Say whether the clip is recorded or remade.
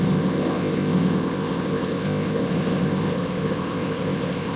remade